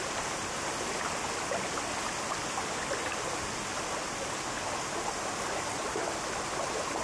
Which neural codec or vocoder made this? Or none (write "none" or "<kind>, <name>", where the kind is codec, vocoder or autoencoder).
none